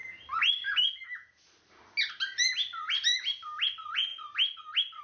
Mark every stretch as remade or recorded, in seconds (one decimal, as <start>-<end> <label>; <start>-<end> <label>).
0.0-2.1 recorded; 2.1-4.1 remade; 4.1-5.0 recorded